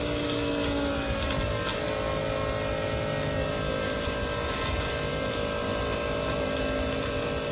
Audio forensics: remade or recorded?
recorded